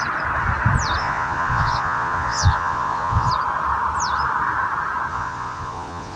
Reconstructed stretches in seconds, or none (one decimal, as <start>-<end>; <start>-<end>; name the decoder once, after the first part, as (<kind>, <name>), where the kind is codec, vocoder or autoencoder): 1.0-3.3 (vocoder, Vocos); 5.1-6.2